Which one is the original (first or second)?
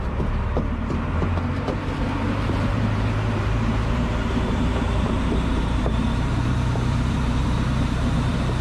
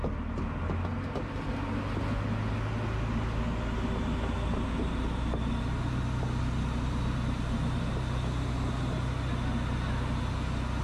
second